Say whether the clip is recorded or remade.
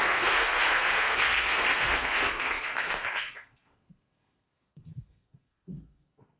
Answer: remade